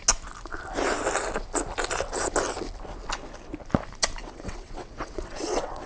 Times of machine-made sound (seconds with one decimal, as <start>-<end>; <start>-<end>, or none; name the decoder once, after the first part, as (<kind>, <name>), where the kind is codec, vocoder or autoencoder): 4.2-5.9 (vocoder, WaveNeXt)